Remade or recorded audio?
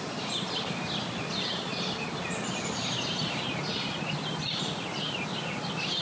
recorded